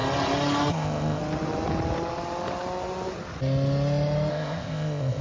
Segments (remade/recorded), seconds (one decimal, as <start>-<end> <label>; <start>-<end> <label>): 0.0-0.7 recorded; 0.7-1.2 remade; 1.2-4.3 recorded; 4.3-5.2 remade